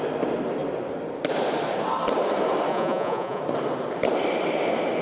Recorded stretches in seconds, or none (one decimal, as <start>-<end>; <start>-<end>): 0.0-2.7; 3.4-5.0